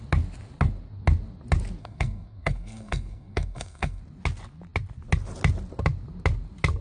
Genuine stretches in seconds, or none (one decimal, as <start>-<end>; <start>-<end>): 0.0-1.8; 4.0-6.8